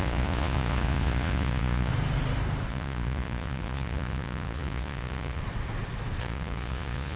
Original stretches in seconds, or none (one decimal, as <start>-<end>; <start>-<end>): 1.9-2.7; 5.4-6.2